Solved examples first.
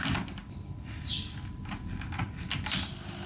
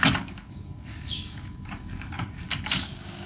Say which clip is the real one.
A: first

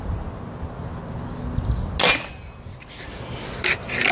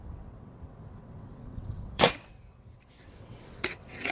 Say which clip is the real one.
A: first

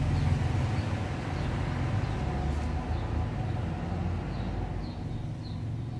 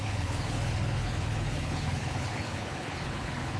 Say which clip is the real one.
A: first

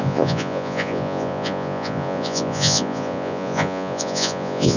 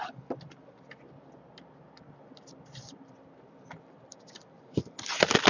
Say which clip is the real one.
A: second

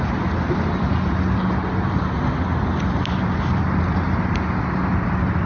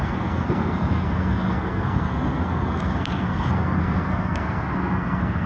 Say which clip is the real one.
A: first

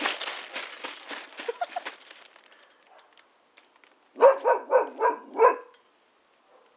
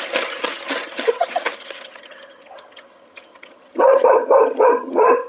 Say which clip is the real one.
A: first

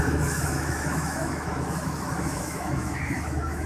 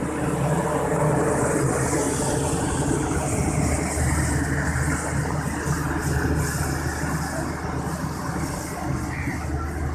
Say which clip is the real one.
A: second